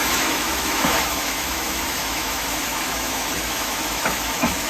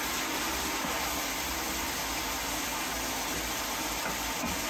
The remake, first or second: first